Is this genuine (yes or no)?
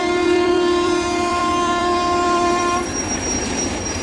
no